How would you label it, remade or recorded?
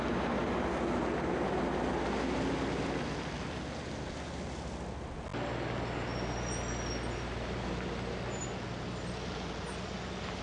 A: recorded